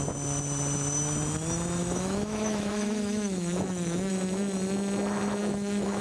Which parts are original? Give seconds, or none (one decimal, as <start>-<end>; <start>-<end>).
0.0-1.8; 4.1-5.4